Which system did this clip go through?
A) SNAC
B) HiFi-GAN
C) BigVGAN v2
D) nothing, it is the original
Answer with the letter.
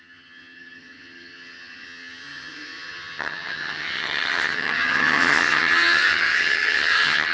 B